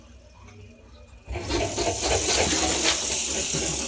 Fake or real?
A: real